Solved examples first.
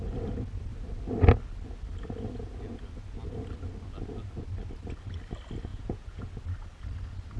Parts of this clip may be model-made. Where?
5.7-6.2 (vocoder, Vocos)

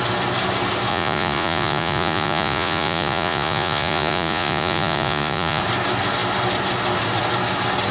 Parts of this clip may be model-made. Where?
0.9-5.6 (vocoder, Vocos)

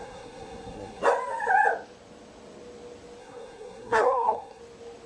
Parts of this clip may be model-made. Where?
0.0-1.0 (codec, SNAC); 3.2-4.6